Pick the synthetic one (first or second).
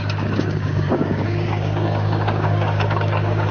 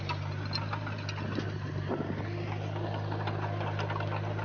first